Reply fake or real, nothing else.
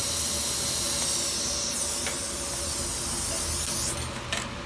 real